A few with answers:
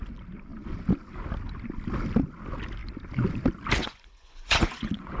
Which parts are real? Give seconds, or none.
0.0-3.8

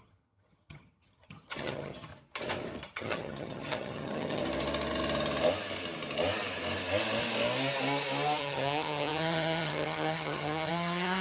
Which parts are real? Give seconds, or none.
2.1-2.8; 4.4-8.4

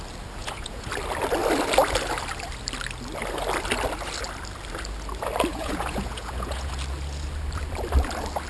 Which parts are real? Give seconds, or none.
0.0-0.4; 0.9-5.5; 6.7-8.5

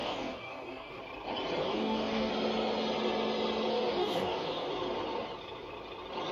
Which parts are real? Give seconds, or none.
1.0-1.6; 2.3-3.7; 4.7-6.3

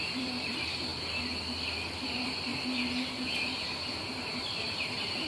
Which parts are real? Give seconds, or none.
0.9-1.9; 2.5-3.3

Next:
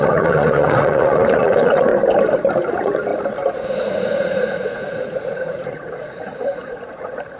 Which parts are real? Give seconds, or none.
1.9-2.7; 3.1-3.9

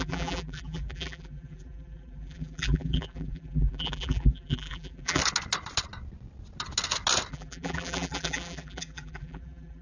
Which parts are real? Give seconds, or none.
5.2-7.3

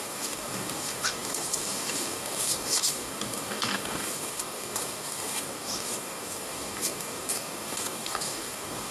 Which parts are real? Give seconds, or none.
none